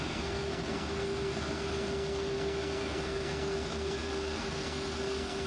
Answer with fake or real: fake